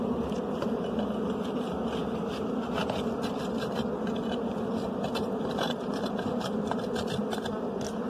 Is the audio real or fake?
real